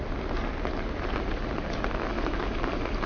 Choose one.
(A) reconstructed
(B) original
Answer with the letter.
B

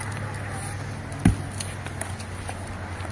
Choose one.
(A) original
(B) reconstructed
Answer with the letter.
A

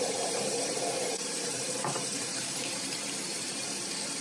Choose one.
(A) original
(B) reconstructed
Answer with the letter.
B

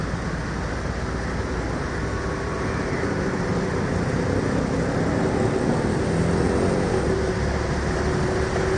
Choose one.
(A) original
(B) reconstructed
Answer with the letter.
A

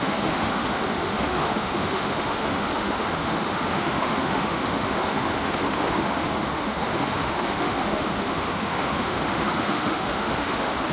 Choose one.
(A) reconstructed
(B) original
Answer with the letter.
A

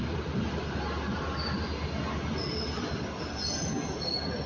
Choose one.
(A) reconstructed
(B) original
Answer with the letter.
B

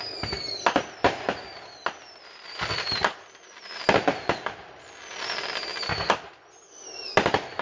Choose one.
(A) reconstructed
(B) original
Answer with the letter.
B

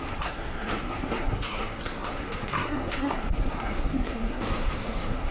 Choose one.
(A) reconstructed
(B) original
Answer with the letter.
A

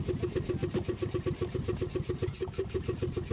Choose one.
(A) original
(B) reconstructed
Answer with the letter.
A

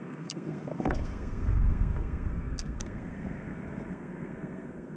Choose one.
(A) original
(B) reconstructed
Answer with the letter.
B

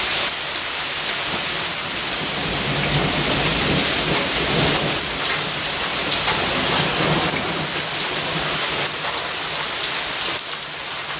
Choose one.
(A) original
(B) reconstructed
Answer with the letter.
A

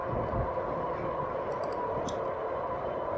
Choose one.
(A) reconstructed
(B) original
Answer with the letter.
B